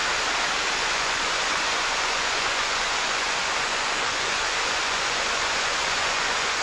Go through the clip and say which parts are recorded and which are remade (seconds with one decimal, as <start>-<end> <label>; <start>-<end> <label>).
0.0-0.8 recorded; 0.8-6.6 remade